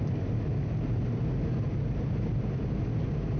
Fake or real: real